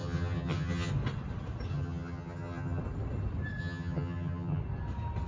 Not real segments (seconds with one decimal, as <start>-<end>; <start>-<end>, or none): 0.0-0.9; 1.7-2.8; 3.6-4.6